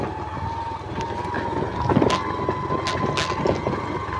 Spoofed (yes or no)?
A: no